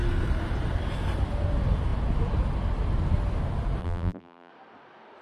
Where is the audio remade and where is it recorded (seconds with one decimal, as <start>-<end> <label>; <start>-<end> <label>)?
0.0-3.8 recorded; 3.8-4.5 remade; 4.5-5.2 recorded